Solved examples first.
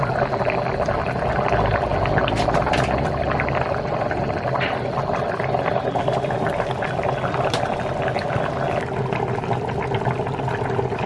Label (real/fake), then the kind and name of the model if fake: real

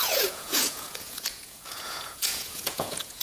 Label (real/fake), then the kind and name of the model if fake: fake, vocoder, Vocos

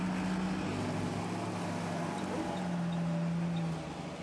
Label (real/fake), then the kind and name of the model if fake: real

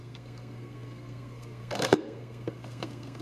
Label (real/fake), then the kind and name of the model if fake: fake, codec, SNAC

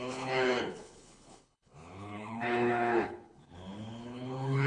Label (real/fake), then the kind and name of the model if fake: fake, codec, HILCodec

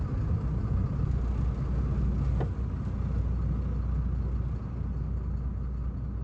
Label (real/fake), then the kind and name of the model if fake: real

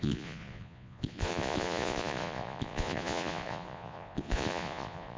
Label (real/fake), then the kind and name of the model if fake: fake, vocoder, Vocos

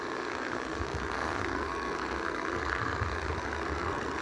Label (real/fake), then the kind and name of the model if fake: fake, codec, SNAC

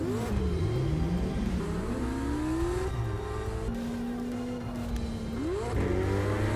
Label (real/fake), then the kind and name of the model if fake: real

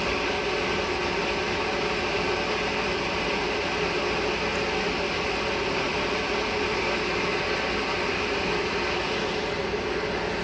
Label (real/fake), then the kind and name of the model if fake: real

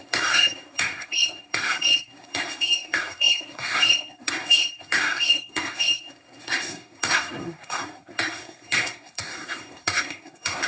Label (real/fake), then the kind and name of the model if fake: fake, codec, SNAC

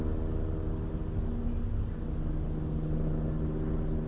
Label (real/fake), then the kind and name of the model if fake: real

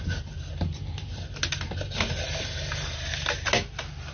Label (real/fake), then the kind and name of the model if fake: real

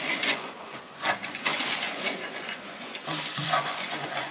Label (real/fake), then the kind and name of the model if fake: fake, vocoder, Vocos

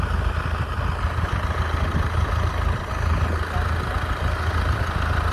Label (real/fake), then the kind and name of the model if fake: real